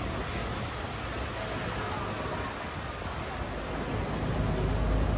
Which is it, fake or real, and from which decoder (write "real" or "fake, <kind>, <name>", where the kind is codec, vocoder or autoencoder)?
real